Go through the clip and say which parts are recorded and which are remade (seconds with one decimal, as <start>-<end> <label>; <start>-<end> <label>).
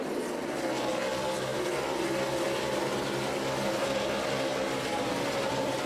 0.0-5.9 recorded